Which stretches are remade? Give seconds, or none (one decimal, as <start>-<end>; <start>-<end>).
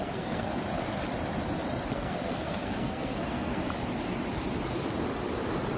0.0-0.5; 1.9-3.6